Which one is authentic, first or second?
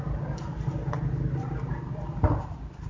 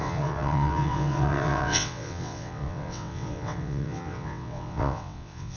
first